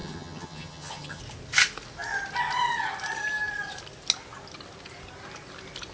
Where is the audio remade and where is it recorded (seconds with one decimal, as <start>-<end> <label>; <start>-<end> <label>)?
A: 0.0-1.2 remade; 1.2-5.9 recorded